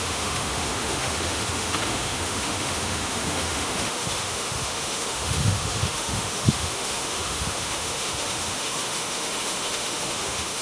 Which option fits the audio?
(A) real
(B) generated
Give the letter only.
B